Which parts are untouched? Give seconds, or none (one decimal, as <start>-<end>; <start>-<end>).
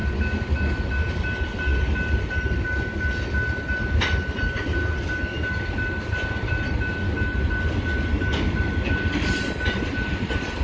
0.0-10.6